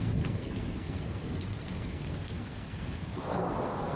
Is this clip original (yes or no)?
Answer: no